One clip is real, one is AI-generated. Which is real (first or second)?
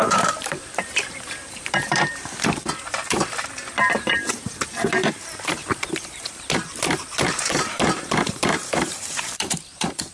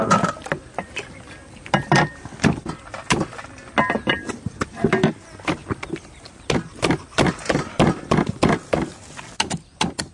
second